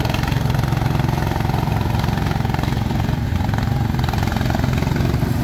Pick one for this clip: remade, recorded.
recorded